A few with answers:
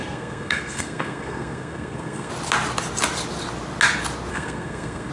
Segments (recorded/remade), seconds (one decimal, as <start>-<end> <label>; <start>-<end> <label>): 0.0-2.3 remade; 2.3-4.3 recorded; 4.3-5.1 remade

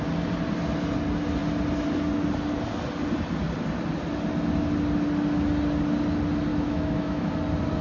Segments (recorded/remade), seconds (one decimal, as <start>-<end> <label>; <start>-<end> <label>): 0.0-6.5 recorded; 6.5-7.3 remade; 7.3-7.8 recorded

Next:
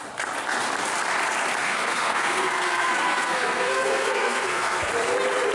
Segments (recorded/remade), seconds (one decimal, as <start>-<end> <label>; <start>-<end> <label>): 0.0-1.6 recorded; 1.6-4.9 remade; 4.9-5.5 recorded